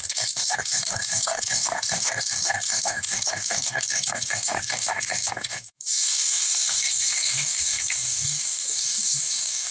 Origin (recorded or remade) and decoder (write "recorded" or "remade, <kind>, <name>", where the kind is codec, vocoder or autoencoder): remade, codec, DAC